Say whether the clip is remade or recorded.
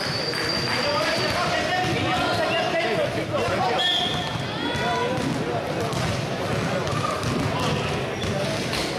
recorded